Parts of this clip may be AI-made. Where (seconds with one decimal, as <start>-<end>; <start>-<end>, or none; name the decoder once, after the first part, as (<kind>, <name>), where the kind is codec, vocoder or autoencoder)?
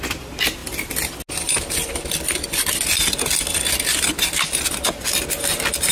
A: none